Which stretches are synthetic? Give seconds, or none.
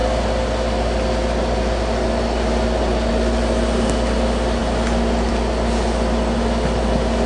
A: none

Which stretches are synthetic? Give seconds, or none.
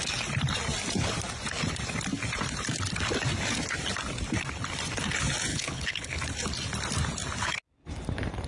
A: 5.5-6.2 (codec, HILCodec)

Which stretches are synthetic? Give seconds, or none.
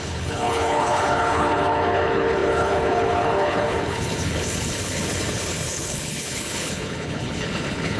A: 0.0-8.0 (codec, HILCodec)